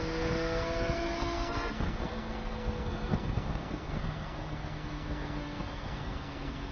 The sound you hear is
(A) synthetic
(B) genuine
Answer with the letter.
A